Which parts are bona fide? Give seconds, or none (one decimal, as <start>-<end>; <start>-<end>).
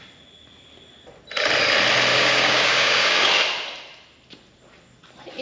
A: 0.0-2.1; 3.3-5.4